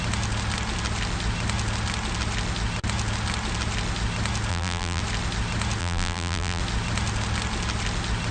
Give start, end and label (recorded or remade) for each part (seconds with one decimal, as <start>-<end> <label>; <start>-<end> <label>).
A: 0.0-4.5 recorded; 4.5-5.0 remade; 5.0-5.8 recorded; 5.8-6.6 remade; 6.6-8.3 recorded